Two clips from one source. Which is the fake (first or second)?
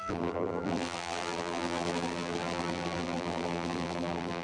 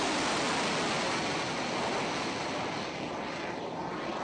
first